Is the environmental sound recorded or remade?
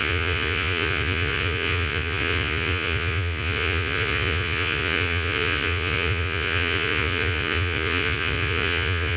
remade